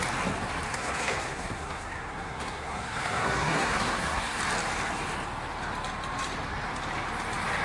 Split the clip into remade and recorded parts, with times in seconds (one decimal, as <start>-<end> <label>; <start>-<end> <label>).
0.0-0.7 recorded; 0.7-4.4 remade; 4.4-7.6 recorded